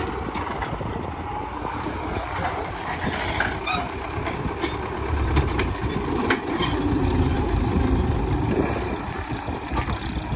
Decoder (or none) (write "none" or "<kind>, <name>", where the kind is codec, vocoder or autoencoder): vocoder, BigVGAN v2